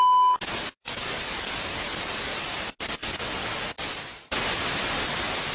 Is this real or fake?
real